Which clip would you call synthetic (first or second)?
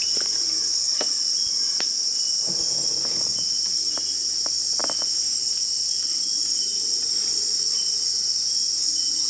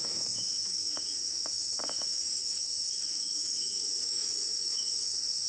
second